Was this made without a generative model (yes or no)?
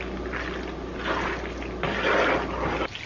yes